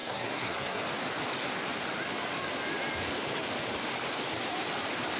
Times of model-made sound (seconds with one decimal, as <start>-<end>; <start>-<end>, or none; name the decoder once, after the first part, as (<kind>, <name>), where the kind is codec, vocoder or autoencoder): 0.0-0.8 (codec, SNAC)